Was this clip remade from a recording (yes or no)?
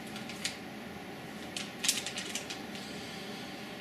no